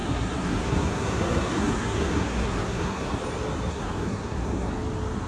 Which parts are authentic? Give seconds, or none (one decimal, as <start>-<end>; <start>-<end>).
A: 3.2-3.7; 4.7-5.3